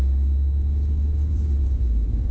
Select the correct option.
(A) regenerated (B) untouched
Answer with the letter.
B